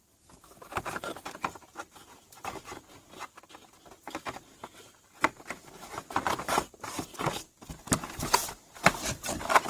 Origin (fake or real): real